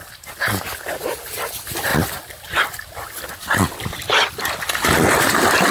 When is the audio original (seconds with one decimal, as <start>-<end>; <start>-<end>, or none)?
0.0-5.7